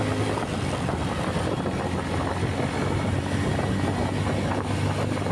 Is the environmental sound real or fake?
real